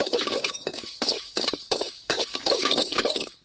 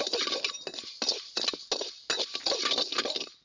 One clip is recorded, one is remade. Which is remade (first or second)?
first